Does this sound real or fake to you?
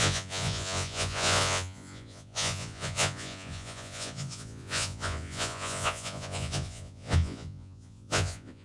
fake